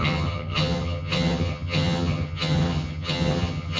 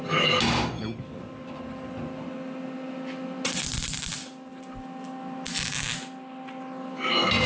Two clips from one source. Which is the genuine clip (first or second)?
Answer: second